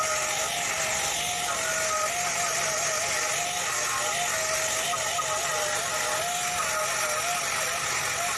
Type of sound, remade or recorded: recorded